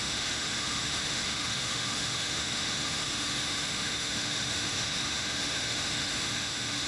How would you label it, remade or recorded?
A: remade